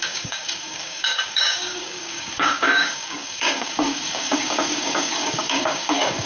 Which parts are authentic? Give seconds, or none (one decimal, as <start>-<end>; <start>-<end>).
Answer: none